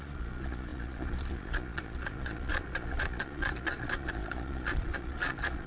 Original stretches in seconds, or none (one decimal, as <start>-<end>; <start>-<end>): none